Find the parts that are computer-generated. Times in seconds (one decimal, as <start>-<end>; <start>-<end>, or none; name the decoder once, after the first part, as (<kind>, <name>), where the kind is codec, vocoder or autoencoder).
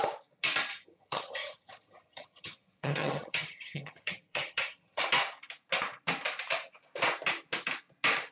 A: 0.7-5.0 (vocoder, HiFi-GAN)